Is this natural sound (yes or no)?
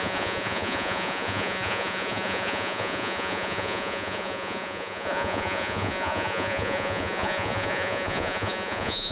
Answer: no